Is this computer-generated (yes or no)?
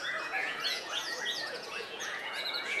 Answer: yes